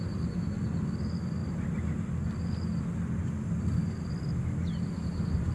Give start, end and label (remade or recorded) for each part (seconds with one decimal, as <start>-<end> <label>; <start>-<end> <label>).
0.0-5.5 recorded